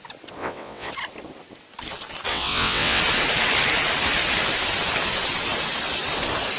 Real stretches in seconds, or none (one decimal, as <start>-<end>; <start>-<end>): 0.0-0.4; 0.9-2.3; 3.0-6.6